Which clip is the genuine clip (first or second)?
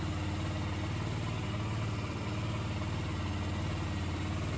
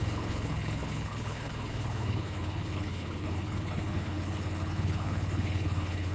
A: first